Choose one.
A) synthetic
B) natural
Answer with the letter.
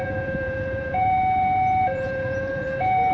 A